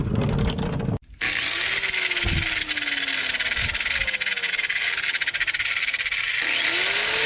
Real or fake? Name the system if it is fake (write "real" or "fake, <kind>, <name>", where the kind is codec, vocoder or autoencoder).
real